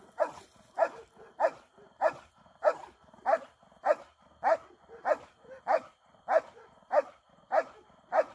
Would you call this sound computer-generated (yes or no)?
no